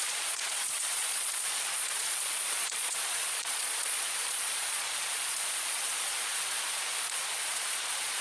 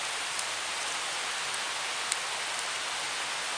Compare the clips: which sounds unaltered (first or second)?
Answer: second